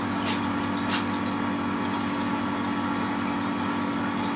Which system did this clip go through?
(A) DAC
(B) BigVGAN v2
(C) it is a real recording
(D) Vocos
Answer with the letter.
C